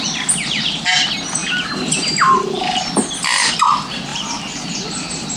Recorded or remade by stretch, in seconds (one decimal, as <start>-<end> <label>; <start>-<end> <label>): 0.0-4.1 recorded; 4.1-4.7 remade; 4.7-5.4 recorded

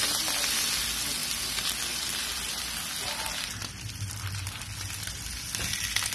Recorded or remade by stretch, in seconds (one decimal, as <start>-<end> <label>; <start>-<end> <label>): 0.0-6.1 recorded

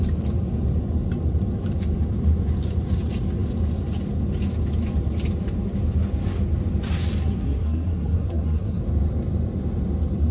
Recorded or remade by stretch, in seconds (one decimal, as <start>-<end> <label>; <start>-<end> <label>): 0.0-7.2 recorded; 7.2-8.8 remade; 8.8-10.3 recorded

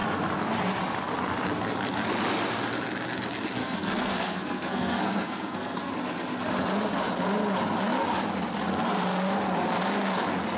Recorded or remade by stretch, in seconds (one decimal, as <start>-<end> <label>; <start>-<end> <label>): 0.0-3.6 recorded; 3.6-5.9 remade; 5.9-10.6 recorded

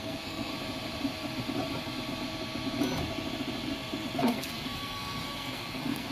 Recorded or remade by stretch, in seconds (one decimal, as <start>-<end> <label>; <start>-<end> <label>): 0.0-0.5 remade; 0.5-4.2 recorded; 4.2-6.1 remade

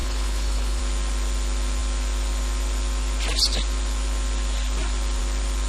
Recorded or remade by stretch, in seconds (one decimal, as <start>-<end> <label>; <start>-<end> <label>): 0.0-0.8 remade; 0.8-5.7 recorded